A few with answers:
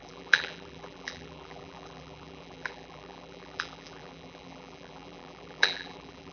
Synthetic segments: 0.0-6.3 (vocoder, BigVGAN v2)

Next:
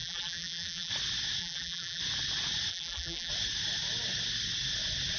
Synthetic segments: 0.0-0.9 (vocoder, BigVGAN v2); 1.4-2.0; 2.7-3.3

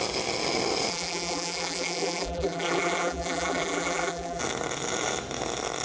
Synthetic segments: 0.9-4.4 (vocoder, BigVGAN v2)

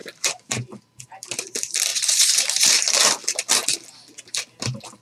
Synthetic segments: 0.0-1.0 (vocoder, BigVGAN v2); 1.9-3.0

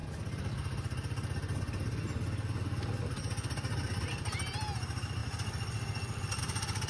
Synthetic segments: none

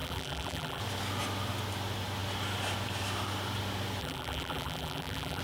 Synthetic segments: 0.0-0.8 (vocoder, BigVGAN v2); 4.0-5.4

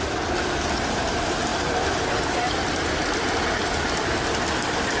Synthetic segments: none

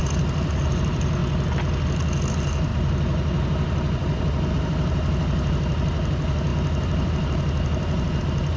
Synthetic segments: 0.0-1.2 (vocoder, BigVGAN v2); 2.3-8.6